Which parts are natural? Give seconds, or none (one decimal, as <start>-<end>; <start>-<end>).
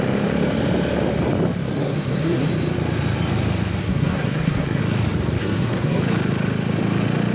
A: 0.0-1.8; 2.5-3.8; 4.8-5.4; 6.0-7.3